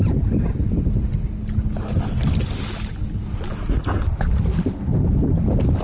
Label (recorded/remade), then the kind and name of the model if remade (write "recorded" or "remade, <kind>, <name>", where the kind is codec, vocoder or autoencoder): recorded